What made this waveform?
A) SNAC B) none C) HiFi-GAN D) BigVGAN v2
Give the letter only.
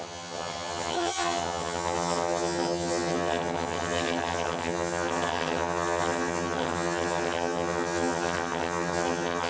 C